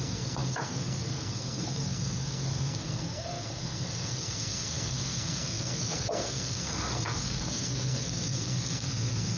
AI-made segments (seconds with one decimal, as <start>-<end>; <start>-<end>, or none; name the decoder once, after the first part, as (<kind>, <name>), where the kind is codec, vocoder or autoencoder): 0.0-9.4 (codec, SNAC)